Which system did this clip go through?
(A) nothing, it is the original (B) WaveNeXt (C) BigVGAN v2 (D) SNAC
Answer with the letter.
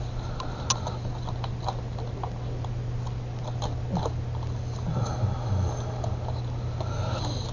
A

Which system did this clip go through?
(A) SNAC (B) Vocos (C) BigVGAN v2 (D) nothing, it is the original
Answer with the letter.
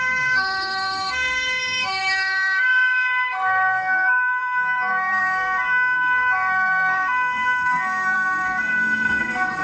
A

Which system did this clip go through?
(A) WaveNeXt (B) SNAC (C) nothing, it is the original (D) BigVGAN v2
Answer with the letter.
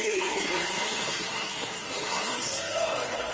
B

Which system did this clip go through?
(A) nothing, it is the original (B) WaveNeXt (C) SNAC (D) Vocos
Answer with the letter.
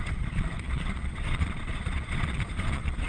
D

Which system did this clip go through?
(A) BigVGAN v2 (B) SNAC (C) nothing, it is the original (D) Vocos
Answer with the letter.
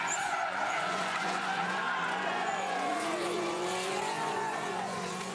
D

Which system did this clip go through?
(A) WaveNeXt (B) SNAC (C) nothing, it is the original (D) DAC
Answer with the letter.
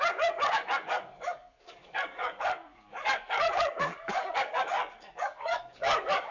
D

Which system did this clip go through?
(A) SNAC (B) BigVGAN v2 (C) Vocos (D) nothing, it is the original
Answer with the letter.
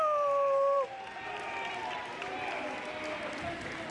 D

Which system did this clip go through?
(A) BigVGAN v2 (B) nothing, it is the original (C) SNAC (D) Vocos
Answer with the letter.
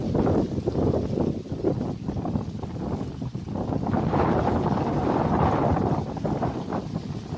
B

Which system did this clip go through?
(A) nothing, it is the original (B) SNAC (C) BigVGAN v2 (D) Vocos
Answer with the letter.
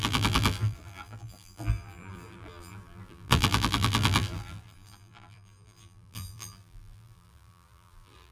C